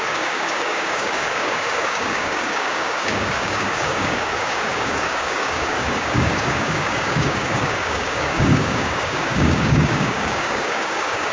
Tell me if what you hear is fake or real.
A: fake